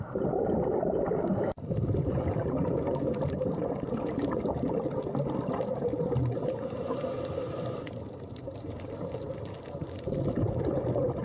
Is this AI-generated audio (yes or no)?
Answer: yes